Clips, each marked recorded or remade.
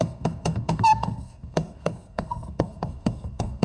remade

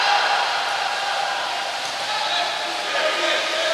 recorded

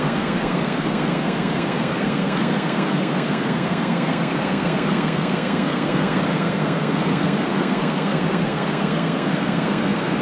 remade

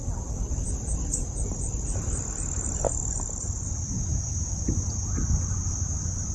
recorded